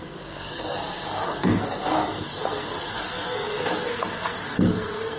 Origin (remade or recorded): remade